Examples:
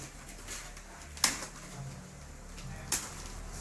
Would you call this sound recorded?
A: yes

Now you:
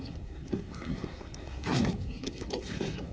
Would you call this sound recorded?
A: no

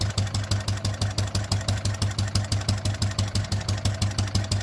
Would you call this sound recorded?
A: yes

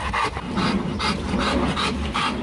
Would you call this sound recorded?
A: yes